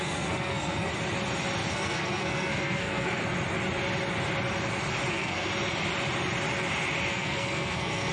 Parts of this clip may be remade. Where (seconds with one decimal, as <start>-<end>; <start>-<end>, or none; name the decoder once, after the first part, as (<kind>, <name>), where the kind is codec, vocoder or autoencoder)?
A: 0.0-0.9 (codec, SNAC); 1.7-3.2; 5.1-5.5; 7.1-8.1